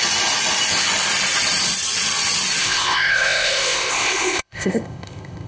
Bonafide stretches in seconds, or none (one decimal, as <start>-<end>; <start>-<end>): 0.0-2.6